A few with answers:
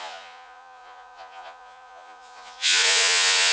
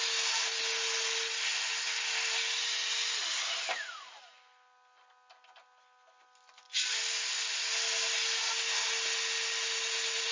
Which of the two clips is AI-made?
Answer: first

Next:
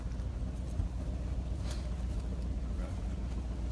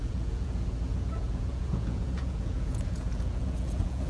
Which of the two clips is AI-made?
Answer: second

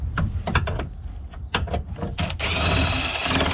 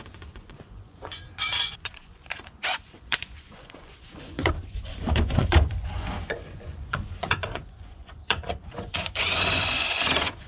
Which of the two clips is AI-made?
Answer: second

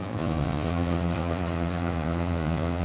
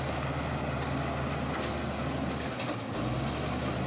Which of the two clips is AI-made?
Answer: first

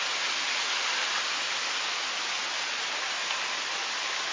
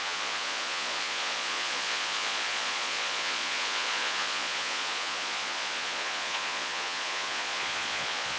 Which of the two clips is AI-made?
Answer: second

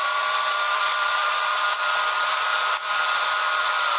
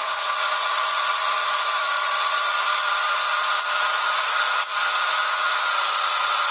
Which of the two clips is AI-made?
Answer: second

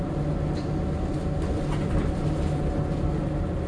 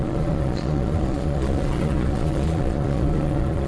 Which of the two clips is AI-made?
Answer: second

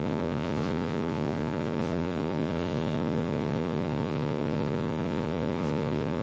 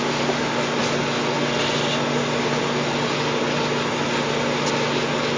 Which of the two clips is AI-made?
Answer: first